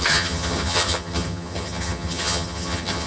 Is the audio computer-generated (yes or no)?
yes